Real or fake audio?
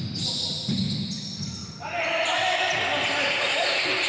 real